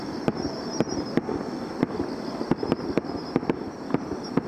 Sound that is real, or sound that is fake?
real